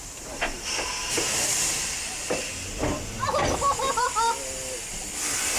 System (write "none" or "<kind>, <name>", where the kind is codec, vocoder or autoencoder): vocoder, BigVGAN v2